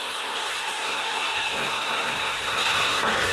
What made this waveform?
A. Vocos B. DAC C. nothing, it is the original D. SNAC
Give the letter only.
D